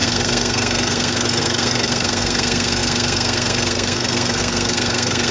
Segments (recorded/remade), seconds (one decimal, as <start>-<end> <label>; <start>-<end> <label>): 0.0-5.3 remade